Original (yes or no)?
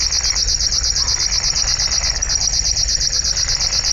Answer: yes